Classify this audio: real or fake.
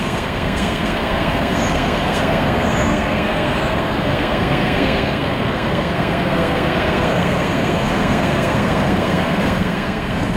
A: fake